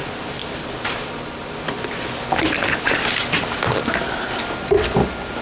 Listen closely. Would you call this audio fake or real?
real